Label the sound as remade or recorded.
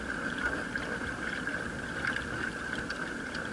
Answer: recorded